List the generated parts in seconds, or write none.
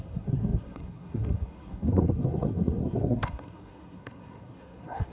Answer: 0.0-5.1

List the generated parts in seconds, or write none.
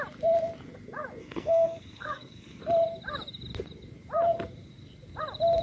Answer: 1.2-2.6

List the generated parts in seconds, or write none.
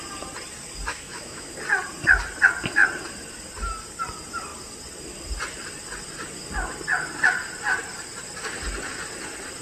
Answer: 0.9-1.5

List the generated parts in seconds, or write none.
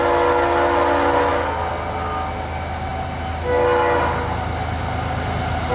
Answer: none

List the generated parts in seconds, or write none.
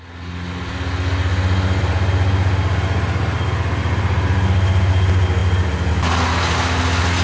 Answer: none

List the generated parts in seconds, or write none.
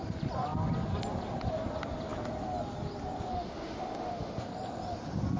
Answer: 3.3-4.4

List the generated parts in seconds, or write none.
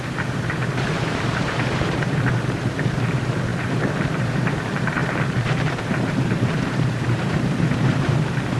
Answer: 0.0-8.6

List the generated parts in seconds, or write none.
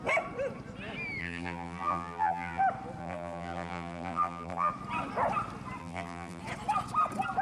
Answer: 1.2-2.6; 3.0-4.7; 5.8-6.4